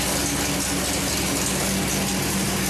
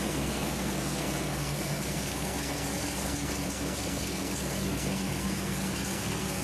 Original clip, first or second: first